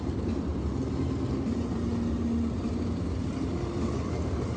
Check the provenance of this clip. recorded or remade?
recorded